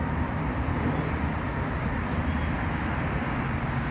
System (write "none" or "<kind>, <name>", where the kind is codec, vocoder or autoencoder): none